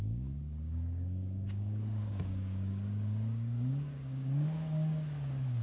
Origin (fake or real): fake